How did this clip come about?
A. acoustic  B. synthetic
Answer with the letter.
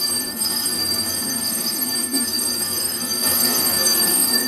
B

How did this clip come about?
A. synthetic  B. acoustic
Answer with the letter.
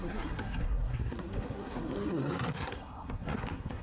A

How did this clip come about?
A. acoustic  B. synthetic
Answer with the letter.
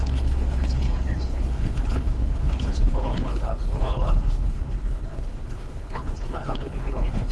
B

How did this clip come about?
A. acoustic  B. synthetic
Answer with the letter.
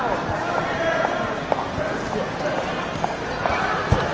A